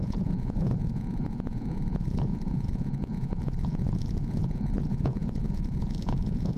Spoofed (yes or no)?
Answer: yes